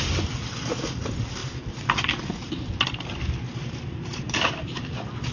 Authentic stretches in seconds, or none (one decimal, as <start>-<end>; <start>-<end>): 0.0-4.1; 4.8-5.3